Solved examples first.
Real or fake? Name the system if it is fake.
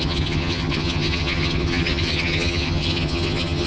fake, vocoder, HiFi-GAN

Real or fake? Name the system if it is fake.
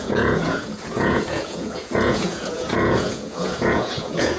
fake, vocoder, Vocos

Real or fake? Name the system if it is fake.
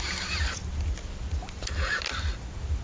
real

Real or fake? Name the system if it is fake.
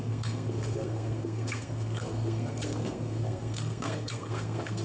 fake, codec, SNAC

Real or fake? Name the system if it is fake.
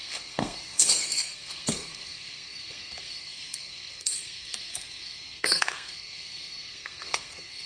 fake, codec, SNAC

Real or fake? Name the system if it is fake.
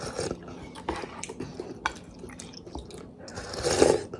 real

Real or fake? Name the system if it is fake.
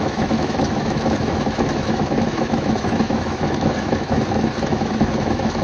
fake, autoencoder, DAC-VAE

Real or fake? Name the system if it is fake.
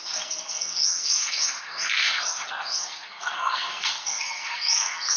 fake, codec, SNAC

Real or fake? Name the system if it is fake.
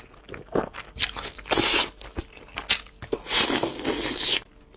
real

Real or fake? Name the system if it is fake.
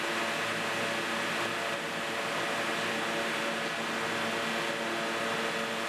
real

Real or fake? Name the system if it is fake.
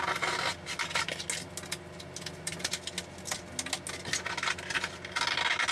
real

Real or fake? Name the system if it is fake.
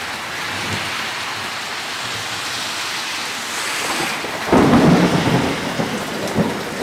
real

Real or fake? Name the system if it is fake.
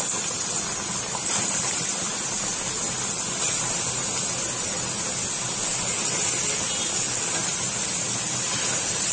real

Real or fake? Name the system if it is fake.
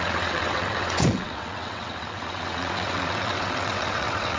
fake, vocoder, WaveNeXt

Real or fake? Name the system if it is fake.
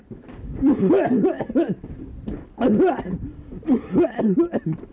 real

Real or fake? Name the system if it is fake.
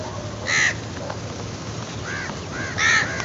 real